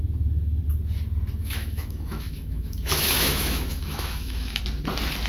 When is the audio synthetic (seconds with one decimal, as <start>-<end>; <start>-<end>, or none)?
1.4-4.6